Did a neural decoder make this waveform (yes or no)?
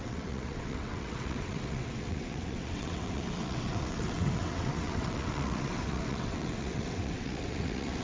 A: yes